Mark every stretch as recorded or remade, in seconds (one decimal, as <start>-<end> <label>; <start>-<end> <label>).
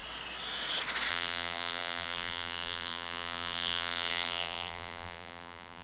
0.0-1.1 recorded; 1.1-5.8 remade